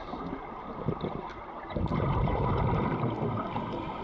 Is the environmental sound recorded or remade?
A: recorded